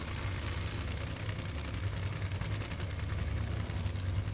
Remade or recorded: recorded